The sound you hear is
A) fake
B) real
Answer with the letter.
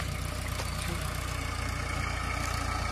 B